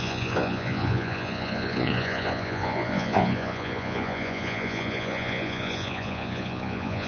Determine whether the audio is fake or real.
fake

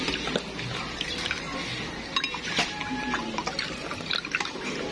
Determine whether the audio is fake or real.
real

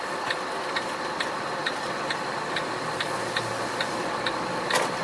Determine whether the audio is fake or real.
real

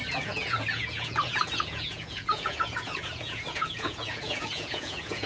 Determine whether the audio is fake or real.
fake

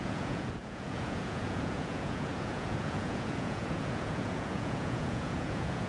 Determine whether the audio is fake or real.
fake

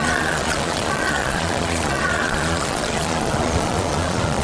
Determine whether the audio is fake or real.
fake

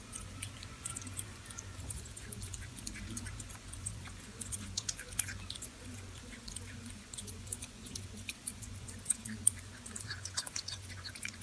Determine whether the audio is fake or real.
fake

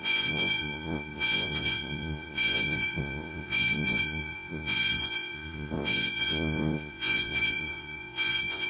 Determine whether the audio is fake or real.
fake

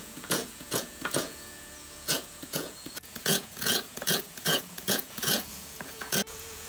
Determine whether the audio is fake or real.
fake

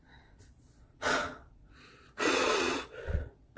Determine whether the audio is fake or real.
fake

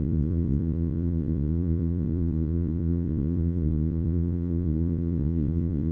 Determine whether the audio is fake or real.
fake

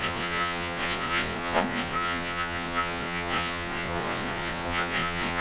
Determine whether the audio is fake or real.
fake